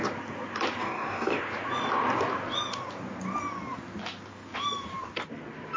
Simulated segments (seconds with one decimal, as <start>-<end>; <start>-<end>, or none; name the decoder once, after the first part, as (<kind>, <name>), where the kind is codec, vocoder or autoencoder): 0.8-1.4 (codec, DAC)